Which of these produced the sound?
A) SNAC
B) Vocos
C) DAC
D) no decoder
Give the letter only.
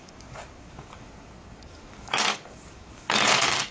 C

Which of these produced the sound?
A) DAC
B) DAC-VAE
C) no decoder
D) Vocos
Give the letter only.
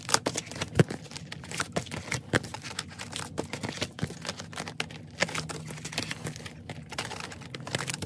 C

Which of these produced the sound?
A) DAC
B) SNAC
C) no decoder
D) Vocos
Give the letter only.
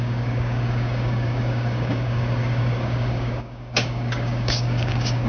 A